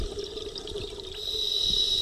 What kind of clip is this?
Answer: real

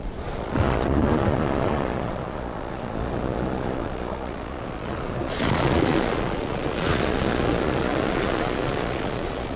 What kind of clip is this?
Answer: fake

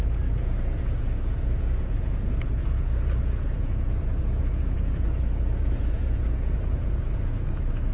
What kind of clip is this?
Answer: fake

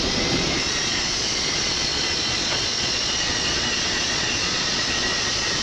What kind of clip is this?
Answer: fake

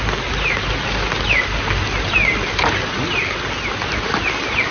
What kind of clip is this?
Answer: real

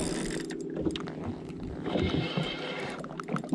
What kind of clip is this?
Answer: real